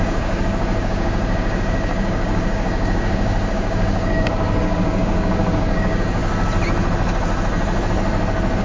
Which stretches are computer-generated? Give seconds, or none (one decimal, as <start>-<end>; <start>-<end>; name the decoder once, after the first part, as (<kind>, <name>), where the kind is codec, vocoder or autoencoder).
0.0-6.2 (codec, DAC)